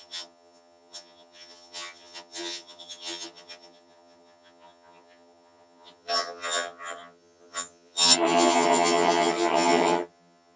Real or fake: fake